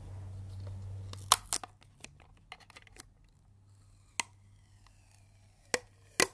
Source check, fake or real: real